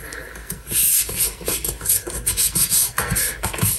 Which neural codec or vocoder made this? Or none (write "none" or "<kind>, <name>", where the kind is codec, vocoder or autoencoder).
codec, SNAC